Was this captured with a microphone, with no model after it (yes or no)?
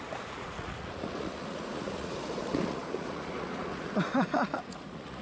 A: no